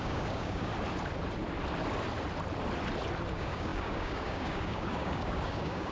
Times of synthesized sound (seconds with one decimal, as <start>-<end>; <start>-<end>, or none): 0.0-0.7; 3.3-5.9